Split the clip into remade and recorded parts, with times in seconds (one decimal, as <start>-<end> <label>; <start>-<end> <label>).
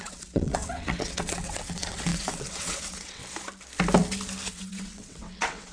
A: 0.0-3.2 remade; 3.2-4.5 recorded; 4.5-5.7 remade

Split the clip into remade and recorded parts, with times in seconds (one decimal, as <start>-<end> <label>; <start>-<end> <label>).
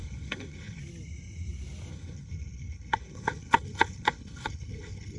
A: 0.0-0.8 remade; 0.8-1.9 recorded; 1.9-5.2 remade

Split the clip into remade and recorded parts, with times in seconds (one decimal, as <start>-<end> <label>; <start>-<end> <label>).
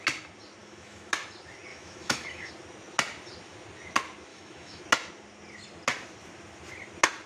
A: 0.0-0.6 recorded; 0.6-1.1 remade; 1.1-1.7 recorded; 1.7-2.5 remade; 2.5-4.3 recorded; 4.3-4.8 remade; 4.8-7.3 recorded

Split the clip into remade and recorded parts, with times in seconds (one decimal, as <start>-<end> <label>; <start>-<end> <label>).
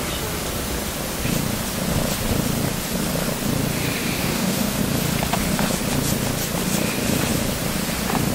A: 0.0-4.2 recorded; 4.2-4.8 remade; 4.8-8.3 recorded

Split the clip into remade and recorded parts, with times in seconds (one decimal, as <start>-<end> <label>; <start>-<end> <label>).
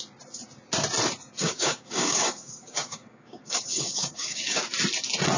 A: 0.0-1.4 recorded; 1.4-4.6 remade; 4.6-5.4 recorded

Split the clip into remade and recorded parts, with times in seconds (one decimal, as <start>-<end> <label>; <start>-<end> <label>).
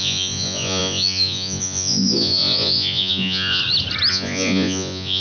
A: 0.0-3.6 remade; 3.6-4.1 recorded; 4.1-5.2 remade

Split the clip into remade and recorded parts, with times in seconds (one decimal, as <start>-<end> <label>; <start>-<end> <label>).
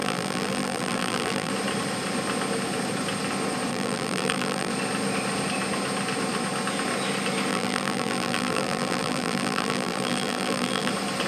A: 0.0-1.5 remade; 1.5-3.7 recorded; 3.7-4.7 remade; 4.7-7.5 recorded; 7.5-10.9 remade; 10.9-11.3 recorded